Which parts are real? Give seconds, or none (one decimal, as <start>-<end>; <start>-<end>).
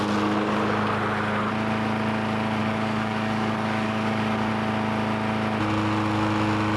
0.0-2.6; 4.5-6.8